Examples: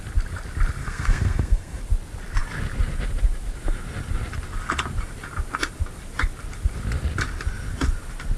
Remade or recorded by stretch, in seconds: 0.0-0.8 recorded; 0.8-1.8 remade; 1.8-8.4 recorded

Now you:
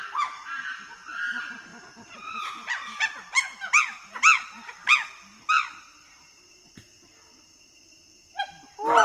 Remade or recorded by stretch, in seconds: 0.0-9.0 recorded

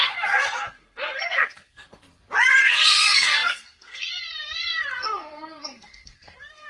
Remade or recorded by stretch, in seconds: 0.0-2.0 remade; 2.0-2.6 recorded; 2.6-6.7 remade

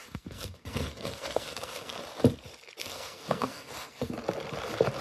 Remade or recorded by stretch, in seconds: 0.0-2.0 remade; 2.0-2.8 recorded; 2.8-4.1 remade; 4.1-5.0 recorded

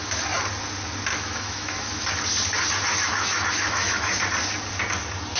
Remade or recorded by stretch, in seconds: 0.0-1.1 recorded; 1.1-2.1 remade; 2.1-2.9 recorded; 2.9-4.2 remade; 4.2-5.4 recorded

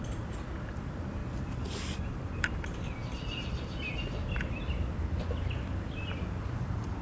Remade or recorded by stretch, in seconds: 0.0-1.2 remade; 1.2-2.1 recorded; 2.1-4.2 remade; 4.2-6.0 recorded; 6.0-7.0 remade

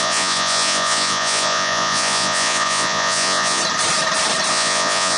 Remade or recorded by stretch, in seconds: 0.0-3.6 remade; 3.6-4.5 recorded; 4.5-5.2 remade